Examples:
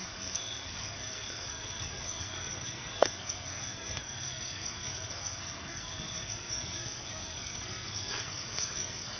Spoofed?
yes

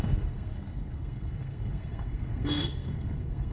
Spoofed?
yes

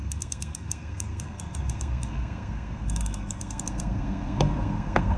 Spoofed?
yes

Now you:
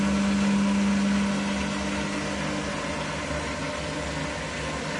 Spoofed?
no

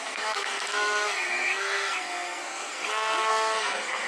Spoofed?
yes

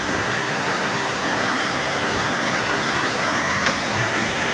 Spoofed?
yes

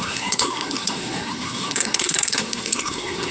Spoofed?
yes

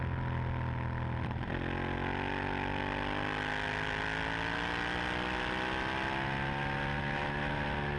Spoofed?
no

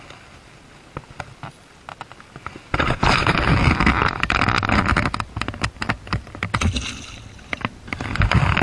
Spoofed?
no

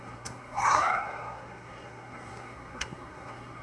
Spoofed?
yes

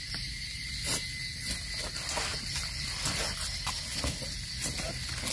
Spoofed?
no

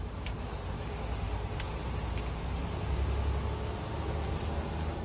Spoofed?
no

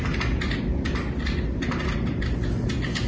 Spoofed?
no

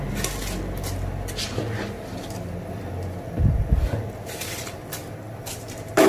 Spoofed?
no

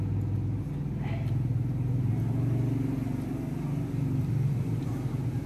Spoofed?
no